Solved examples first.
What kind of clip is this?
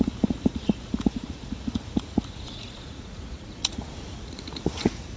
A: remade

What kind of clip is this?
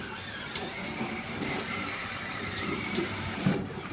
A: remade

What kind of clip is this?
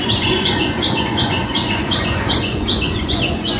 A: remade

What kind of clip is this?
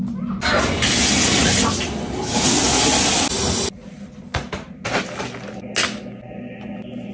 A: recorded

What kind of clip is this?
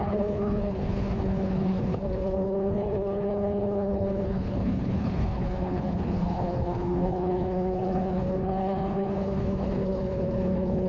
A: remade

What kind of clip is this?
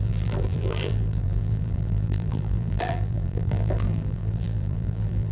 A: remade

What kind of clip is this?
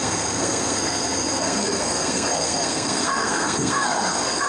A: remade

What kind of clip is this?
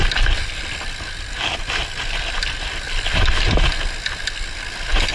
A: recorded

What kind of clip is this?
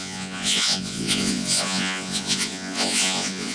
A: remade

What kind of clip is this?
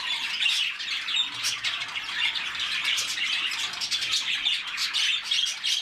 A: recorded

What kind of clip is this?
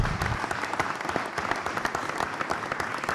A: recorded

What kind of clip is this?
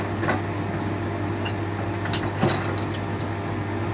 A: recorded